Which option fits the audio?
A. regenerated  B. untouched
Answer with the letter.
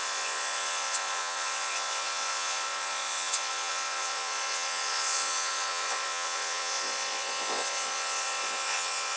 A